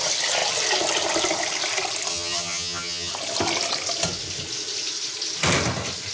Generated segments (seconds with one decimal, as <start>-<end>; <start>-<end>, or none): 2.1-3.1